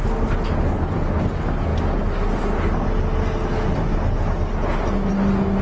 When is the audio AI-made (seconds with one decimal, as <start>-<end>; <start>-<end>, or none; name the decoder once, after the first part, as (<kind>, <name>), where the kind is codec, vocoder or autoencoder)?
none